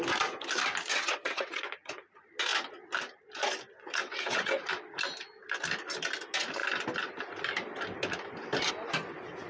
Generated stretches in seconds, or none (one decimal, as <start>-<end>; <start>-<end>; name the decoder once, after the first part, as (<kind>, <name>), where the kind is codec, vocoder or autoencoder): 0.9-1.6 (vocoder, WaveNeXt); 4.0-4.6